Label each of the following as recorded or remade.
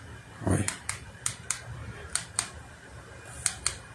recorded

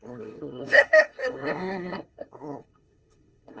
remade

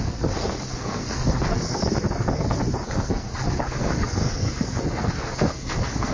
remade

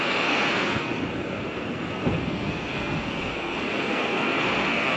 remade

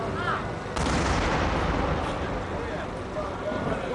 recorded